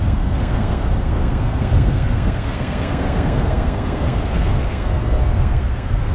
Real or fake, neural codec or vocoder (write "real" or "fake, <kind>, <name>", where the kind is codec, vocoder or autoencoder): fake, codec, SNAC